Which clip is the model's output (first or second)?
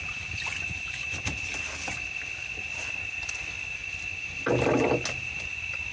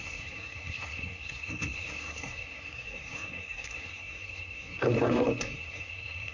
second